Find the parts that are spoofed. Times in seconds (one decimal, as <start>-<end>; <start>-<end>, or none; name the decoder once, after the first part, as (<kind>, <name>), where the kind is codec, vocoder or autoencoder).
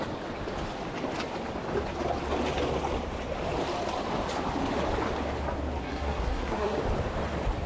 5.8-6.8 (codec, SNAC)